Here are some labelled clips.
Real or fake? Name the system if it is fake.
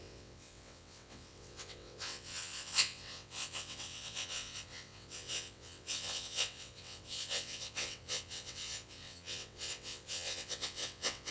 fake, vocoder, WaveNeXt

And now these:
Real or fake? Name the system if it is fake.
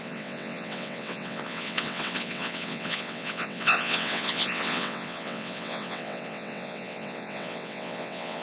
fake, vocoder, WaveNeXt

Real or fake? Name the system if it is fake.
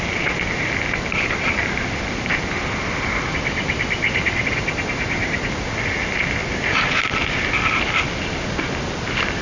real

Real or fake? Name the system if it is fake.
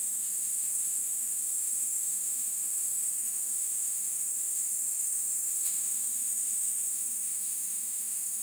fake, autoencoder, DAC-VAE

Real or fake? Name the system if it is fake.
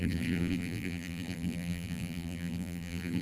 fake, vocoder, BigVGAN v2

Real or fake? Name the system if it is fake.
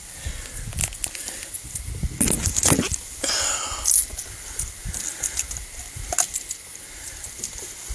real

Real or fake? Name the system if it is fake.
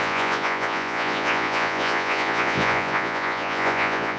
fake, vocoder, Vocos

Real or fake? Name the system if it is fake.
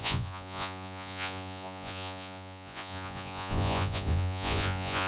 fake, vocoder, Vocos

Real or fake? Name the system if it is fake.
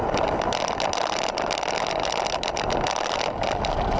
real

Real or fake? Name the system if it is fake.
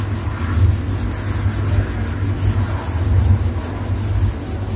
real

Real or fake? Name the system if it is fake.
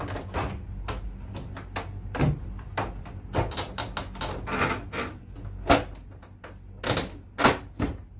real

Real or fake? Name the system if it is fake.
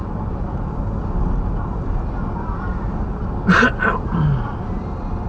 real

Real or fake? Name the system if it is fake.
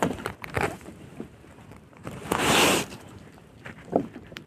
fake, vocoder, BigVGAN v2